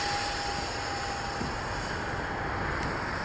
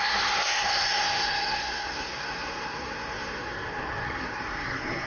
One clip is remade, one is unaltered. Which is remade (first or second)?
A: second